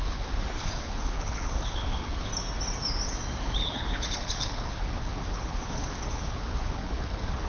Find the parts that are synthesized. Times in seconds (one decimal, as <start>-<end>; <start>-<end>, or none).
0.0-2.3; 3.4-7.5